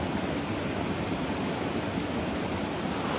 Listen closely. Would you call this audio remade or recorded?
recorded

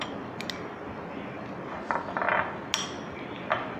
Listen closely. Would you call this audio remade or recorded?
recorded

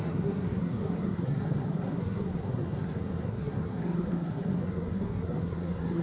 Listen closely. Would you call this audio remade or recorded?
remade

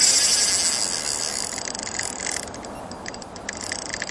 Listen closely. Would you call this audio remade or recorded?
recorded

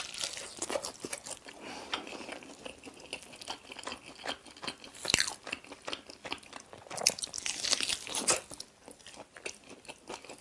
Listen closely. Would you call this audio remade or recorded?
recorded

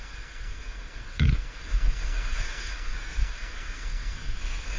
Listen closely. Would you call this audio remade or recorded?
remade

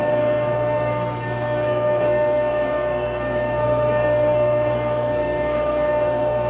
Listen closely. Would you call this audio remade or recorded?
remade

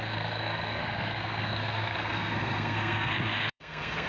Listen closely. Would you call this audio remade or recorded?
remade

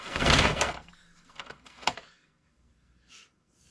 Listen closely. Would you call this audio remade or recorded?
remade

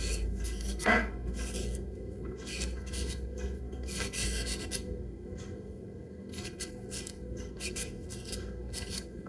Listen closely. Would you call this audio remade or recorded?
remade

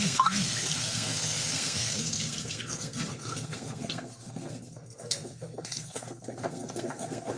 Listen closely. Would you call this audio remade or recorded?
remade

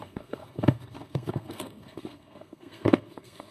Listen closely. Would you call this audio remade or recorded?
remade